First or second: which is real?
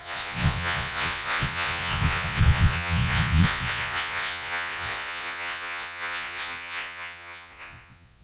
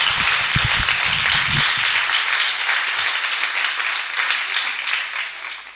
second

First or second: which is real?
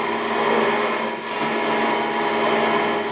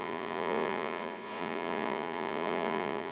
first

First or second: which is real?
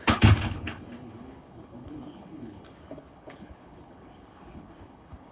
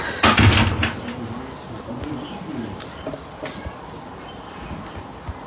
second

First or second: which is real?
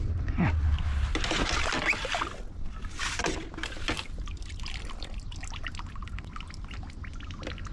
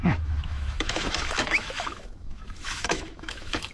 first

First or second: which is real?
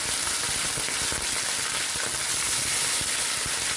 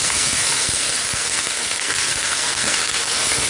first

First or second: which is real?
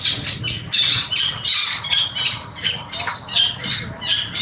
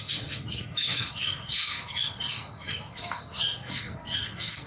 first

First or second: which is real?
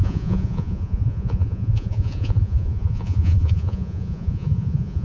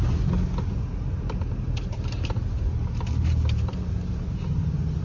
second